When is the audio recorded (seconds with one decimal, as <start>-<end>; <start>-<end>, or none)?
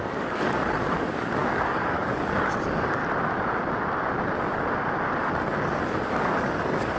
3.0-6.1